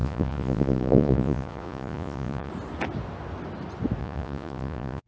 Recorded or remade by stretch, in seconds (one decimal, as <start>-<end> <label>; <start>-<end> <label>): 0.0-2.5 remade; 2.5-4.0 recorded; 4.0-5.1 remade